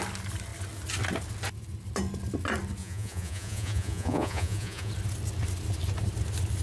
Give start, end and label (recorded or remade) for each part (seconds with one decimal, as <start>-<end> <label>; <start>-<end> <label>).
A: 0.0-2.8 recorded; 2.8-4.9 remade; 4.9-6.6 recorded

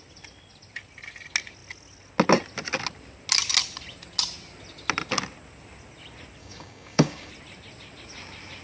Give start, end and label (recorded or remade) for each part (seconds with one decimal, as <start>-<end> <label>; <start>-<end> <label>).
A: 0.0-6.4 recorded; 6.4-7.3 remade; 7.3-8.6 recorded

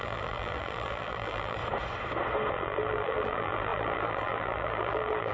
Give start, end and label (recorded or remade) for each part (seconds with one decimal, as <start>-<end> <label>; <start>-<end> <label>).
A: 0.0-1.6 remade; 1.6-2.5 recorded; 2.5-5.3 remade

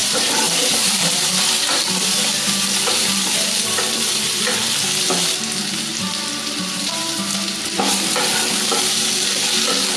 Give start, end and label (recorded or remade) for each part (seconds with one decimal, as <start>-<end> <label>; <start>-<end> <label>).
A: 0.0-4.7 remade; 4.7-6.3 recorded; 6.3-7.8 remade; 7.8-10.0 recorded

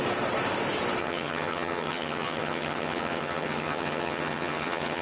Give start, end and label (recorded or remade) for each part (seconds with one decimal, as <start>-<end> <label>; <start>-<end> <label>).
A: 0.0-1.0 recorded; 1.0-5.0 remade

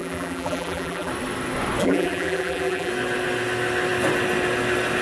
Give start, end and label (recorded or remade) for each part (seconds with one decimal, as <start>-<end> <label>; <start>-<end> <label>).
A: 0.0-1.1 remade; 1.1-1.8 recorded; 1.8-2.9 remade; 2.9-5.0 recorded